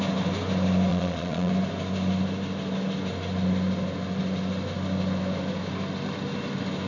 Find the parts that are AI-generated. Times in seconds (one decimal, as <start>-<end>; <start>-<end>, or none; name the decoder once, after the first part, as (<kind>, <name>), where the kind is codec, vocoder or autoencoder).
0.9-1.5 (vocoder, Vocos)